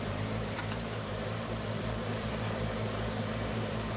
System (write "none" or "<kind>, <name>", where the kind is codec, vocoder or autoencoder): vocoder, BigVGAN v2